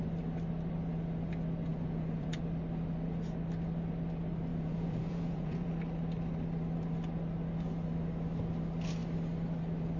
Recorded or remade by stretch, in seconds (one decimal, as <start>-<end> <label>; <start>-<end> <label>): 0.0-1.7 recorded; 1.7-2.4 remade; 2.4-4.5 recorded; 4.5-5.7 remade; 5.7-10.0 recorded

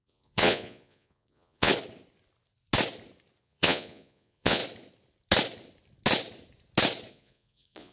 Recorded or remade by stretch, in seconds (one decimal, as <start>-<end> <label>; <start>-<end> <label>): 0.0-1.7 remade; 1.7-3.4 recorded; 3.4-4.6 remade; 4.6-7.1 recorded; 7.1-7.9 remade

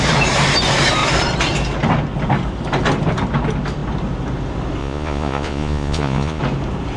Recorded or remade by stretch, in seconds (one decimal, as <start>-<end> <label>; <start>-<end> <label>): 0.0-4.8 recorded; 4.8-6.4 remade; 6.4-7.0 recorded

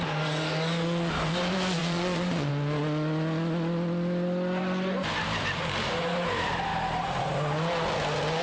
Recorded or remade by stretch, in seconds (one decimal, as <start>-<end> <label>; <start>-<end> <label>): 0.0-1.8 recorded; 1.8-2.5 remade; 2.5-8.4 recorded

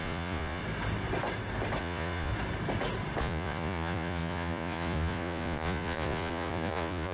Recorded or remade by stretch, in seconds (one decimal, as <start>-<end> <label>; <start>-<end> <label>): 0.0-0.6 remade; 0.6-1.8 recorded; 1.8-2.3 remade; 2.3-3.2 recorded; 3.2-7.1 remade

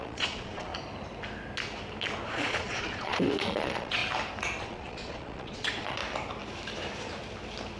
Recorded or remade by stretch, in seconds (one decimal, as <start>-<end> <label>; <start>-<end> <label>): 0.0-0.7 remade; 0.7-2.3 recorded; 2.3-4.0 remade; 4.0-4.6 recorded; 4.6-6.0 remade; 6.0-7.8 recorded